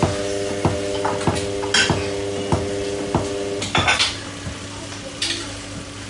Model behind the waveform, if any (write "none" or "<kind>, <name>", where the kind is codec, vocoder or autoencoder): none